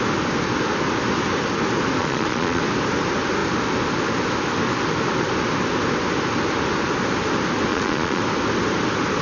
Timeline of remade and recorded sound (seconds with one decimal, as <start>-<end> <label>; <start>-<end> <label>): 0.0-2.0 recorded; 2.0-2.6 remade; 2.6-7.7 recorded; 7.7-8.2 remade; 8.2-9.2 recorded